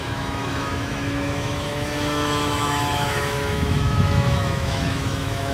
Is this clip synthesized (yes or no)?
yes